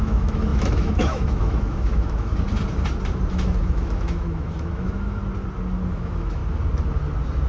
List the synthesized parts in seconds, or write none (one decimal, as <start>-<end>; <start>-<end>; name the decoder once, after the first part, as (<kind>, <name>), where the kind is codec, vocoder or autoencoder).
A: 0.0-2.3 (autoencoder, DAC-VAE); 3.3-5.2; 5.9-6.4